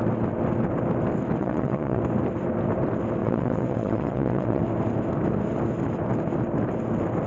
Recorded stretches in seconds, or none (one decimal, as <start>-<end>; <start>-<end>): 0.0-1.4; 2.0-3.2; 4.6-7.3